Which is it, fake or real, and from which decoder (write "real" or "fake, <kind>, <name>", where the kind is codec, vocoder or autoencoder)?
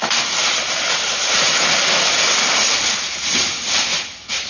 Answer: real